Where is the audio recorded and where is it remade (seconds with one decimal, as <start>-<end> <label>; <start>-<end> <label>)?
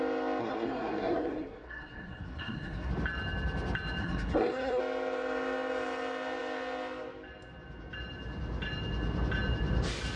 0.0-0.4 recorded; 0.4-2.9 remade; 2.9-4.0 recorded; 4.0-4.8 remade; 4.8-10.2 recorded